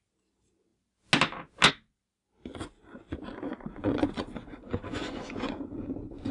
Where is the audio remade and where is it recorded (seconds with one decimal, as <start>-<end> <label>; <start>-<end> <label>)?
0.0-2.5 recorded; 2.5-6.3 remade